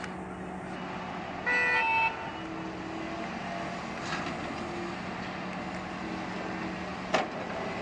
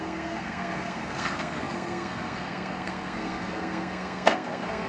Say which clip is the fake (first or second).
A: second